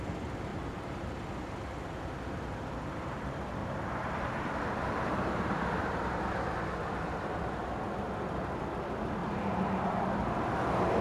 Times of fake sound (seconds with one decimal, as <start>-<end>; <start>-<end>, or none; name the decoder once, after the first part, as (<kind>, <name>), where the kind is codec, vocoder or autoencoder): 0.5-1.1 (vocoder, BigVGAN v2); 3.6-6.1; 9.2-10.0